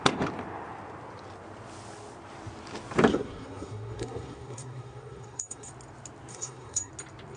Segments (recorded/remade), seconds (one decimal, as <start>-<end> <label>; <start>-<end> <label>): 0.0-3.1 recorded; 3.1-5.7 remade; 5.7-6.3 recorded; 6.3-6.9 remade; 6.9-7.4 recorded

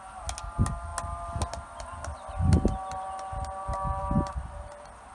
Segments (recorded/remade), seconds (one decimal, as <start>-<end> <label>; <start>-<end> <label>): 0.0-5.1 recorded

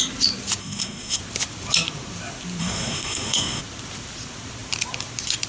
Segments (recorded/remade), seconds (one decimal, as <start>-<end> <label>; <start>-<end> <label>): 0.0-0.6 recorded; 0.6-1.2 remade; 1.2-2.6 recorded; 2.6-3.6 remade; 3.6-5.5 recorded

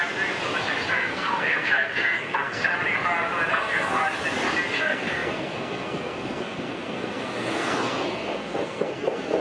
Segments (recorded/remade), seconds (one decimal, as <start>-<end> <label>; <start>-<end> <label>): 0.0-0.9 recorded; 0.9-2.7 remade; 2.7-3.5 recorded; 3.5-4.0 remade; 4.0-4.8 recorded; 4.8-9.4 remade